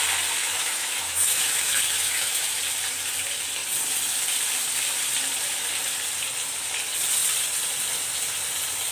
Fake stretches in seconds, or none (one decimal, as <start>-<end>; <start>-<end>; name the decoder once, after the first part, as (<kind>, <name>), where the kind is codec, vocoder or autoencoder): 0.4-2.6 (autoencoder, DAC-VAE)